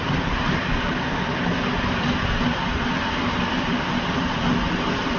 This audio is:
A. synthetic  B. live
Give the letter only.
B